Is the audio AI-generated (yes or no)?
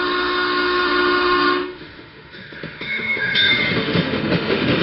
yes